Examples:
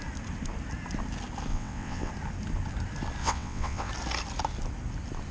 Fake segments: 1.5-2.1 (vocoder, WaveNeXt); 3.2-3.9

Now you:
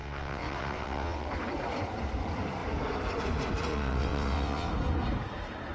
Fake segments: 0.0-1.3 (vocoder, WaveNeXt); 3.7-4.7

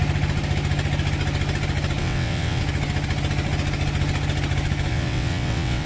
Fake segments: 2.0-2.6 (vocoder, WaveNeXt); 4.9-5.9

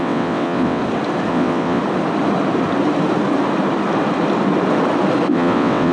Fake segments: 0.0-0.8 (vocoder, WaveNeXt); 1.3-1.8; 5.3-5.9

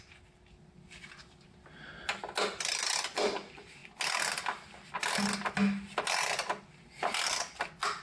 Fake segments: none

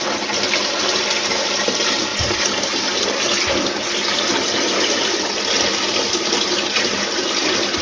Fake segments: none